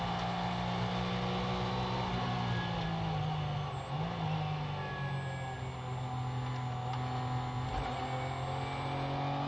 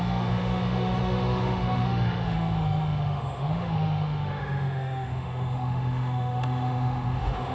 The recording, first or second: first